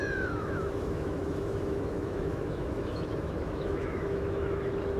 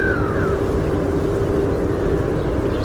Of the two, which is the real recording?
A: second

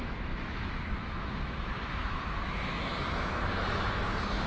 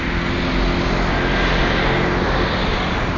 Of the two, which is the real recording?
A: second